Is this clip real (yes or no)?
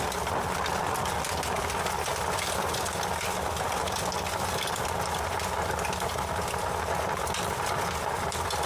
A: yes